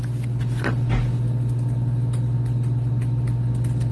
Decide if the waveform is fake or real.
real